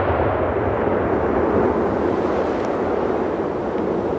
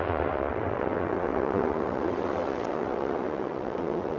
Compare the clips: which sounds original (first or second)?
first